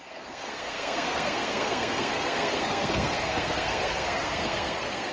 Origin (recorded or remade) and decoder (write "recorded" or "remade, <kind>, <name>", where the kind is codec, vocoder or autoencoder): remade, codec, SNAC